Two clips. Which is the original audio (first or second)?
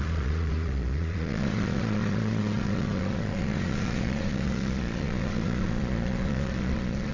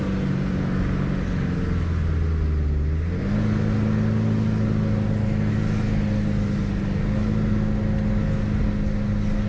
second